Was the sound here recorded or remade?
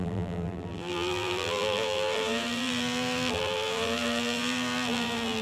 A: remade